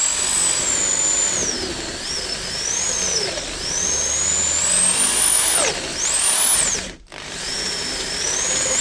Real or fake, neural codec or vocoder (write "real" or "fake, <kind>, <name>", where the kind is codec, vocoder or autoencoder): real